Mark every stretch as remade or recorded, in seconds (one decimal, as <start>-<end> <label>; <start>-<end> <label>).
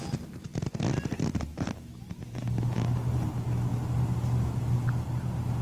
0.0-5.6 recorded